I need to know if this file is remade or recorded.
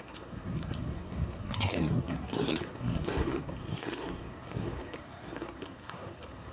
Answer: remade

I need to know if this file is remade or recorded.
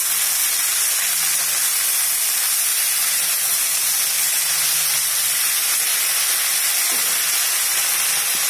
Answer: recorded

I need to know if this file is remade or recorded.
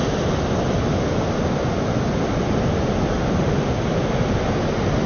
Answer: recorded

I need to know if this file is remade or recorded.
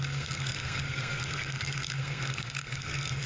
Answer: remade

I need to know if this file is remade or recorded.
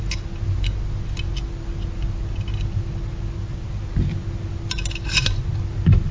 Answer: recorded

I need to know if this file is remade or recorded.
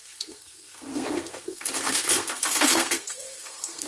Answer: remade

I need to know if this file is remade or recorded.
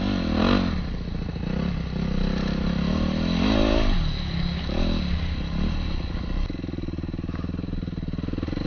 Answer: recorded